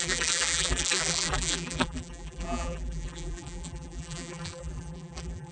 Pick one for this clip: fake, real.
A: fake